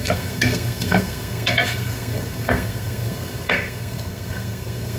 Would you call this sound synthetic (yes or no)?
yes